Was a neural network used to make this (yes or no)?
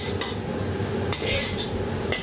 no